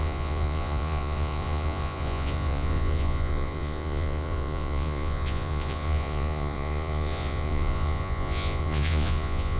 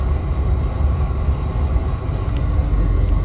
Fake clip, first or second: first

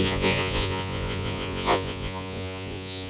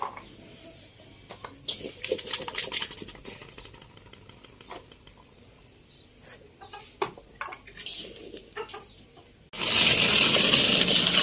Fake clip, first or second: first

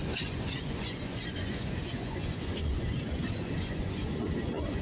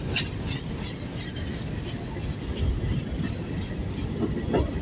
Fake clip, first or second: first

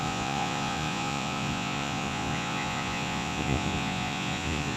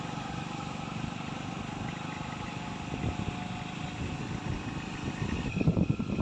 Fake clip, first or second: first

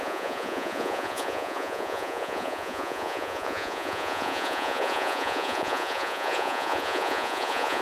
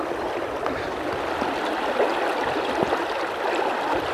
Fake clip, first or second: first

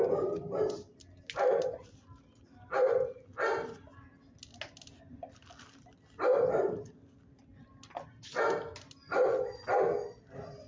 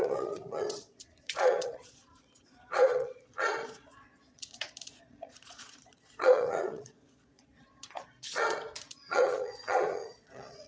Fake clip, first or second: second